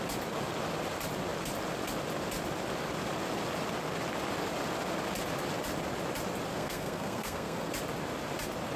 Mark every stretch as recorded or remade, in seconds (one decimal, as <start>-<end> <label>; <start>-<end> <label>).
0.0-6.5 recorded; 6.5-7.7 remade; 7.7-8.8 recorded